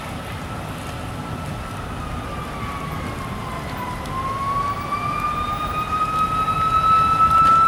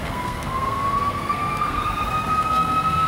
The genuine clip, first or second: first